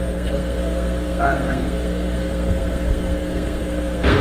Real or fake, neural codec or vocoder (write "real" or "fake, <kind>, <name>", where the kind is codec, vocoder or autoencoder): fake, codec, SNAC